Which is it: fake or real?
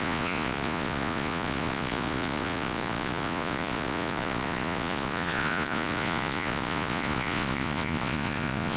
fake